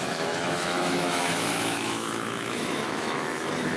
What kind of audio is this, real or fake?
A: fake